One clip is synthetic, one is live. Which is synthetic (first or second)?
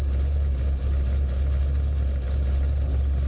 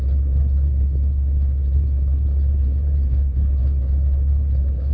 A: second